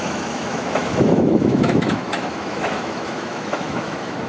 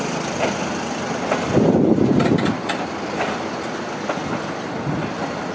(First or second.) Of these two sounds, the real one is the second